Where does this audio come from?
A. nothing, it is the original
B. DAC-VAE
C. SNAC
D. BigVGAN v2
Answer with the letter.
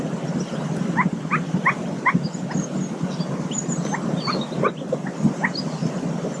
A